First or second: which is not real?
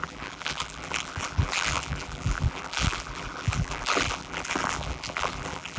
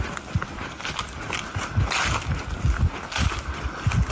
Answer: first